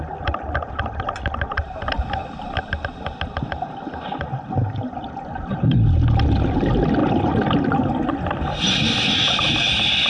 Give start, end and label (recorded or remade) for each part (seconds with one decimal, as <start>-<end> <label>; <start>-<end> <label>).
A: 0.0-10.1 recorded